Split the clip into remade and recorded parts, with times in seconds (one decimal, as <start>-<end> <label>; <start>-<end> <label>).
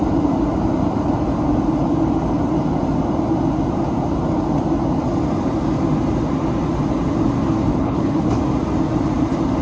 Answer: 0.0-7.7 recorded; 7.7-8.4 remade; 8.4-9.6 recorded